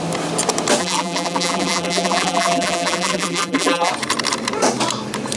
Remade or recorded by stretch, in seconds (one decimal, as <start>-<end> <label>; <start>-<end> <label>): 0.0-0.8 recorded; 0.8-3.9 remade; 3.9-5.4 recorded